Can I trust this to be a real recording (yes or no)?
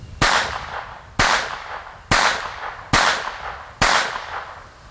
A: yes